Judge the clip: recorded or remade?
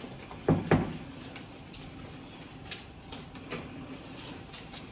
recorded